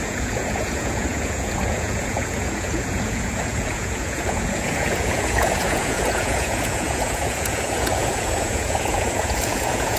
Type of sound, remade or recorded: remade